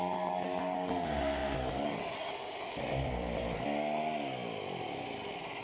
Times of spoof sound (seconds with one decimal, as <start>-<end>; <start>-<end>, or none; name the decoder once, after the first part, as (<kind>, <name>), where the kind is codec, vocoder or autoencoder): none